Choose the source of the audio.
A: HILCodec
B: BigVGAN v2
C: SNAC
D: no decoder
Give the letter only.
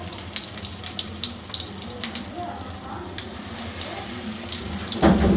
B